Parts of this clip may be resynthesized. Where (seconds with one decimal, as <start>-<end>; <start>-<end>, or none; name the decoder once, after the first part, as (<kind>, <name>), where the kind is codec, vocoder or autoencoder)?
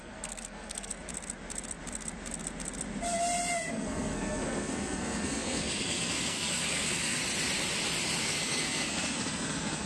0.0-0.9 (codec, SNAC); 3.7-7.2; 8.2-9.9